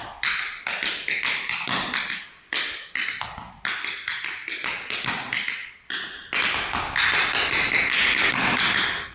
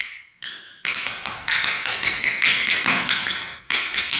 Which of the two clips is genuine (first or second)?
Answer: first